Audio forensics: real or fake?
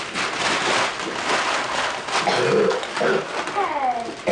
real